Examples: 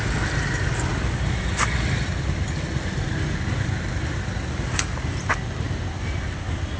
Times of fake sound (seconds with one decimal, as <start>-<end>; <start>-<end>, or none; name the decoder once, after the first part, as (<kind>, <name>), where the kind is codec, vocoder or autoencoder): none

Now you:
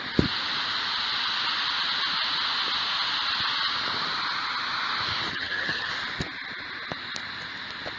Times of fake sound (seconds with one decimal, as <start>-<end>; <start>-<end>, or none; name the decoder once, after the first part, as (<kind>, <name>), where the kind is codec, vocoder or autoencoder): 5.3-5.9 (vocoder, HiFi-GAN)

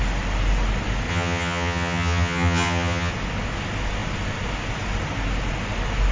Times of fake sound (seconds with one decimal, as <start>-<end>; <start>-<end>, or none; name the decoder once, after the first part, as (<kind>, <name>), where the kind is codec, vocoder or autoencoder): 1.1-3.1 (vocoder, HiFi-GAN)

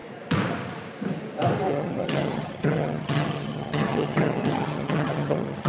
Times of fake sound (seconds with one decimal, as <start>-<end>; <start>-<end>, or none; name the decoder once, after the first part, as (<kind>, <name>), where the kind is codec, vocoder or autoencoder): 1.7-5.7 (vocoder, HiFi-GAN)